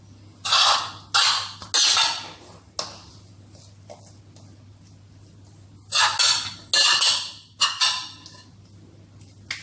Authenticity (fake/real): real